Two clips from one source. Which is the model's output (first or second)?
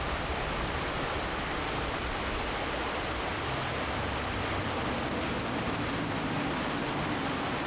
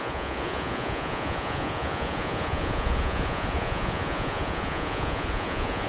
second